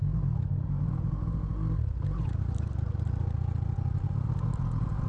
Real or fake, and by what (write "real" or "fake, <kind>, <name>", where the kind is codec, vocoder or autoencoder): real